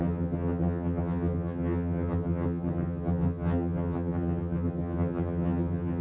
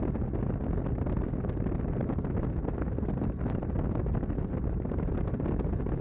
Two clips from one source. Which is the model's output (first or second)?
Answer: first